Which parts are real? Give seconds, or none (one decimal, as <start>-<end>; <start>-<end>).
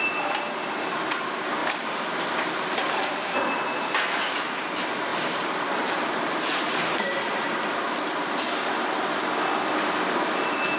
0.0-1.6; 3.3-5.1; 8.3-10.8